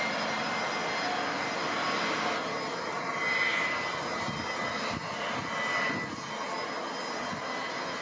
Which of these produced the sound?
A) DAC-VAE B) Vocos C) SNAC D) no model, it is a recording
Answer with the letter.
D